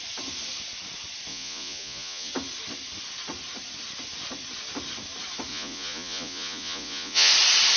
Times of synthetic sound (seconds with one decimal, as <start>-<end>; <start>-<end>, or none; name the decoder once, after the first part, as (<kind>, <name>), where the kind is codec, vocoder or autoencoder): 1.3-2.3 (vocoder, Vocos); 5.5-7.3

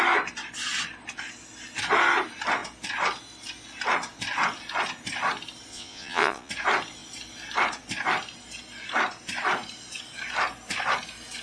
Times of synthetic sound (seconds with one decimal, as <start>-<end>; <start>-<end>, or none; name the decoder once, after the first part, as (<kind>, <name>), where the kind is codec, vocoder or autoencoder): 5.7-6.5 (vocoder, Vocos)

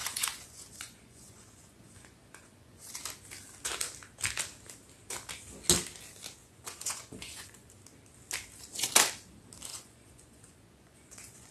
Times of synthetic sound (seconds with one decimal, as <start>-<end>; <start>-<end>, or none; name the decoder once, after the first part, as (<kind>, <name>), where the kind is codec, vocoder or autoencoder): 0.0-2.9 (vocoder, Vocos); 6.4-7.7; 9.7-11.5

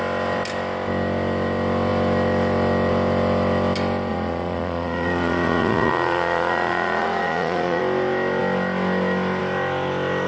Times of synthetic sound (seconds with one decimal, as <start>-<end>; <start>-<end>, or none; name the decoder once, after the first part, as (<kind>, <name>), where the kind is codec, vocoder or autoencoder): 4.1-7.8 (vocoder, Vocos)

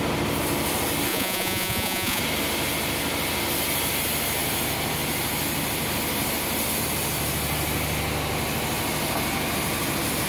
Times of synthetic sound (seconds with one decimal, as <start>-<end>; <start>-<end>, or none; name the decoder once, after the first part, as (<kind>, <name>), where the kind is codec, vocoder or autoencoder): 1.1-2.2 (vocoder, Vocos)

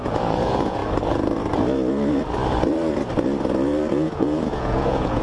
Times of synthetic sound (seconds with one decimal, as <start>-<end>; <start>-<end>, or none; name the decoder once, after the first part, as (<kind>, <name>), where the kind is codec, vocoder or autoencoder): 0.0-0.8 (vocoder, Vocos); 3.9-5.2

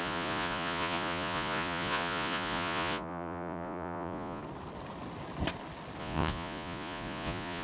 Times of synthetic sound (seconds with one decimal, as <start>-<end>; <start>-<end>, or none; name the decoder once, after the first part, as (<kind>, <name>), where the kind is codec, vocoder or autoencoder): 0.0-4.4 (vocoder, Vocos); 6.0-7.6

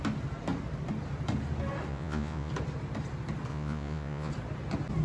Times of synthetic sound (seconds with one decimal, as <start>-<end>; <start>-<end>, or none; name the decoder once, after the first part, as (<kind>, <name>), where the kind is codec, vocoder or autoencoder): 1.9-2.5 (vocoder, Vocos); 3.5-4.3